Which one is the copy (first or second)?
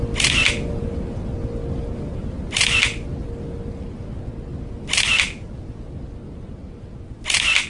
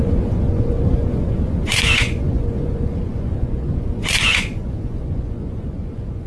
second